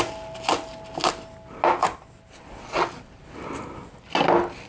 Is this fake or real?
real